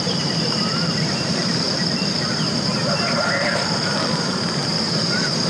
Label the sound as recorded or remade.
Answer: remade